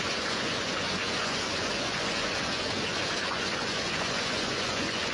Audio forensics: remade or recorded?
remade